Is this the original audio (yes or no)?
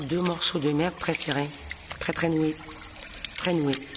yes